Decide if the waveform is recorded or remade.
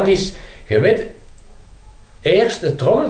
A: remade